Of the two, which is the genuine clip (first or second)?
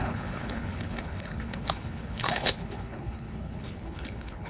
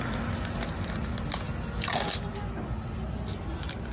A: second